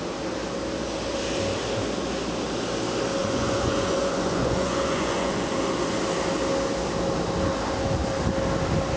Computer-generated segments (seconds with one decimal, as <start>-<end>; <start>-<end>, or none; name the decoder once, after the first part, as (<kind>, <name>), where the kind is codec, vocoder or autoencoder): 3.2-5.5 (vocoder, Vocos)